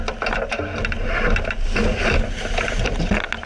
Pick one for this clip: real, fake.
real